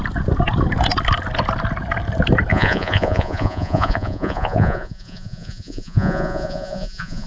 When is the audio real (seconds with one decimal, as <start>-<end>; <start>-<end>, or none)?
0.0-2.5